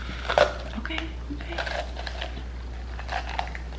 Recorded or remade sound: recorded